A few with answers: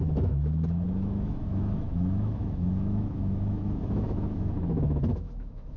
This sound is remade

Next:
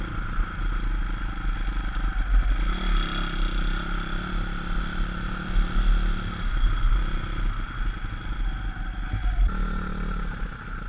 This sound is recorded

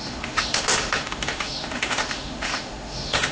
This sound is remade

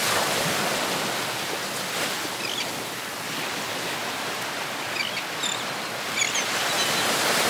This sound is recorded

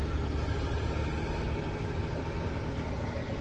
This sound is recorded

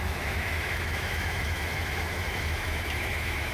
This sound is remade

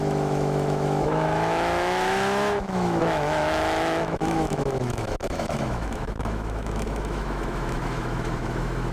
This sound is remade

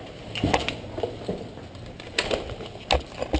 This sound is recorded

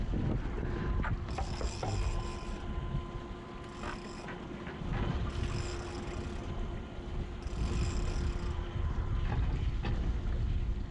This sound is recorded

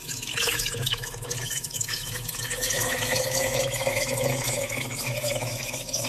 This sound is remade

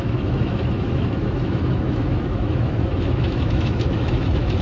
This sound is remade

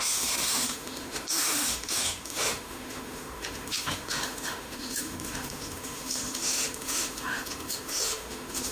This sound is remade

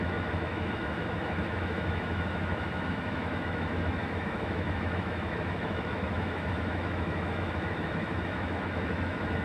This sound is remade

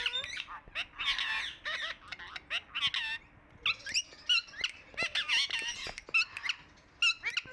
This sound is recorded